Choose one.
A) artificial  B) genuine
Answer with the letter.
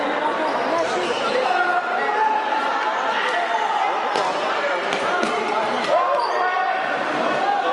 B